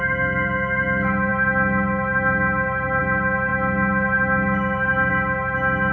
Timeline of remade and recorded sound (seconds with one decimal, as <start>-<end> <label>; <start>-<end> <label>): 0.0-5.9 recorded